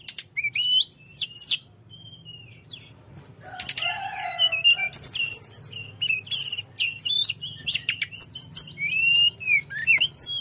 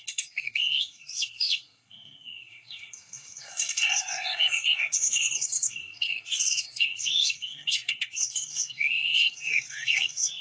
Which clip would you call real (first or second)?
first